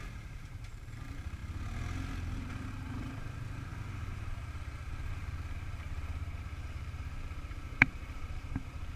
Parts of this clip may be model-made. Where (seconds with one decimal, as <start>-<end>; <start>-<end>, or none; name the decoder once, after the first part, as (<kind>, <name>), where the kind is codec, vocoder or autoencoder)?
0.0-1.4 (vocoder, BigVGAN v2); 2.5-9.0